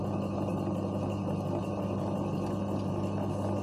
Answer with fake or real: real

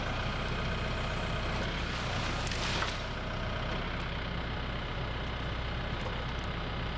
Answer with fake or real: real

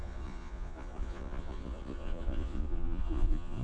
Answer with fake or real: fake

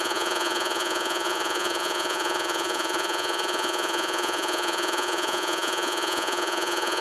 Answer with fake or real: fake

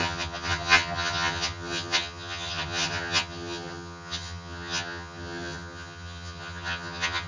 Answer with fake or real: fake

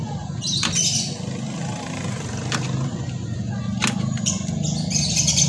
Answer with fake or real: real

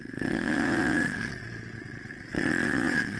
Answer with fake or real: fake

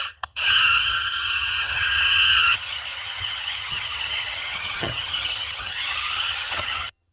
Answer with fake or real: fake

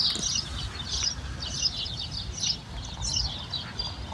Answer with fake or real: real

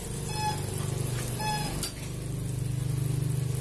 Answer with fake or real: real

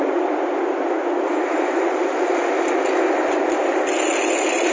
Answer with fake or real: real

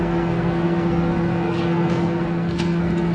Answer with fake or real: fake